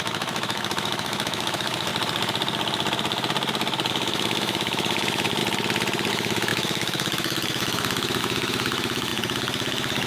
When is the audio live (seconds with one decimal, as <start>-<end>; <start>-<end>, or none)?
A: 1.9-3.9; 5.4-6.1